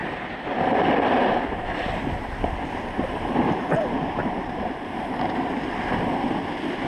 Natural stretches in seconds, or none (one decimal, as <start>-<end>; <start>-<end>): 4.1-6.9